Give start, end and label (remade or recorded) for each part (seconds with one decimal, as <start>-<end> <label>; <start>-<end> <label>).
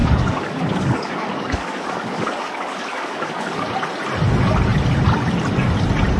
0.0-3.7 remade; 3.7-6.2 recorded